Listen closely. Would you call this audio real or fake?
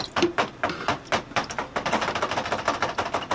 real